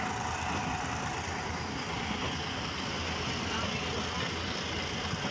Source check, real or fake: real